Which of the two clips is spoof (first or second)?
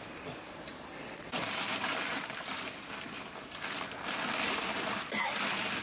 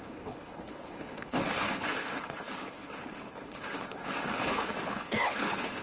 second